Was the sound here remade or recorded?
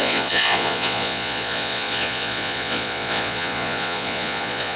remade